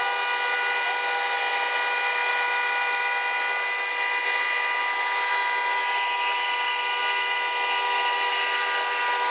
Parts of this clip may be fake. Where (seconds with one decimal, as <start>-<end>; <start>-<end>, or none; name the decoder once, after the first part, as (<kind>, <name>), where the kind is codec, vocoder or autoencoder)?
none